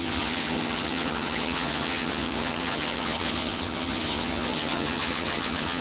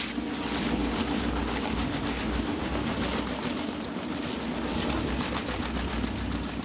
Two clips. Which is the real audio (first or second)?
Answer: second